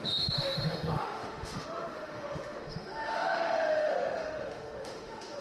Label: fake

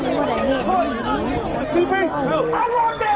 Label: real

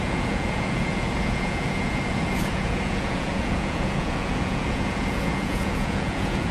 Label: fake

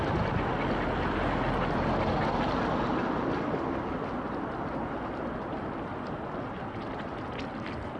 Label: real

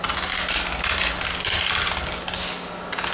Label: real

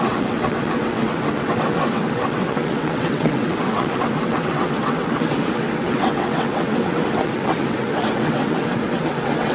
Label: fake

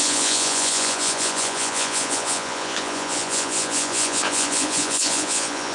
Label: fake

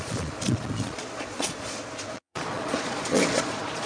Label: fake